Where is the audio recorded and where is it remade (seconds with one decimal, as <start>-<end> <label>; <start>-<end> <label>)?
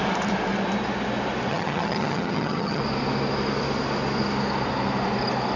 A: 0.0-1.5 recorded; 1.5-2.8 remade; 2.8-5.6 recorded